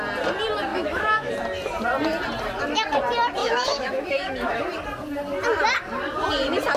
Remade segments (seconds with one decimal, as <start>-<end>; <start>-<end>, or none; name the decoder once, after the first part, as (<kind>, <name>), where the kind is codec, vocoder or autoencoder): 0.7-1.3 (autoencoder, DAC-VAE); 3.4-4.6